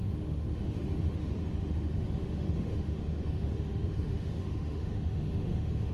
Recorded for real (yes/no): no